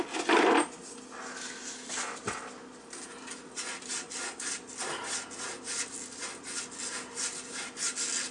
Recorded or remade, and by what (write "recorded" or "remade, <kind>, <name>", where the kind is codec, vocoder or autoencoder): recorded